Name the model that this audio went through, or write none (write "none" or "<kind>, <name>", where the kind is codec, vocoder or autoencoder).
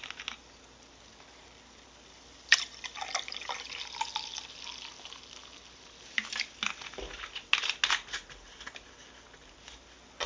none